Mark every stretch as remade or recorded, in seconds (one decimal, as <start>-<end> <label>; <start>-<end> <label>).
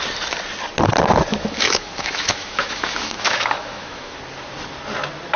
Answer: 0.0-1.3 recorded; 1.3-4.2 remade; 4.2-5.4 recorded